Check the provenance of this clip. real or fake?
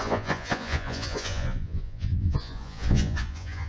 fake